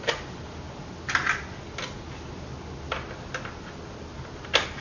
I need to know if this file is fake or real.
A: real